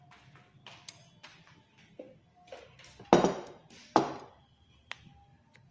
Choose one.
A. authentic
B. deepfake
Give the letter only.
A